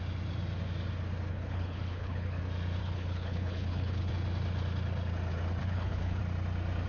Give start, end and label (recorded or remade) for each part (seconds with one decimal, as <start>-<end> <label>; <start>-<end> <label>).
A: 0.0-1.3 recorded; 1.3-2.4 remade; 2.4-2.8 recorded; 2.8-4.1 remade; 4.1-5.6 recorded; 5.6-6.2 remade; 6.2-6.9 recorded